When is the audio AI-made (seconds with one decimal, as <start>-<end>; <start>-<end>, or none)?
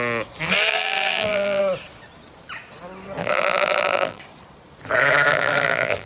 0.7-1.6; 3.2-4.2; 5.3-6.1